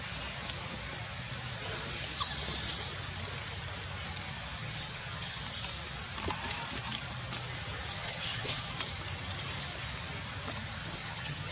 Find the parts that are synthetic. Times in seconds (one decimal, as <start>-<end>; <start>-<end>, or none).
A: 4.6-5.4; 7.9-8.7; 10.8-11.5